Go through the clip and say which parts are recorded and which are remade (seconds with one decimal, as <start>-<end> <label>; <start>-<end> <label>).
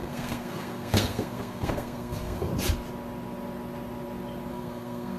0.0-2.5 remade; 2.5-4.5 recorded; 4.5-5.2 remade